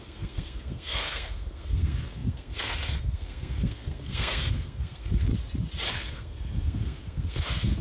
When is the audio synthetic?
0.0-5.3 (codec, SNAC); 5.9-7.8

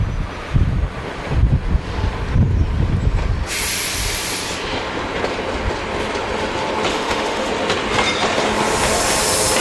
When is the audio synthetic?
6.9-7.5 (autoencoder, DAC-VAE)